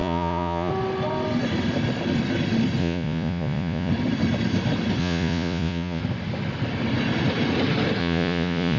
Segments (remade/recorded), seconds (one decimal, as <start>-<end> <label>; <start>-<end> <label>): 0.0-0.7 remade; 0.7-2.8 recorded; 2.8-3.9 remade; 3.9-5.0 recorded; 5.0-6.0 remade; 6.0-8.0 recorded; 8.0-8.8 remade